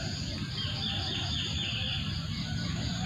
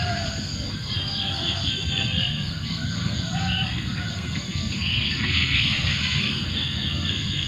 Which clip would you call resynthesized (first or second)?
second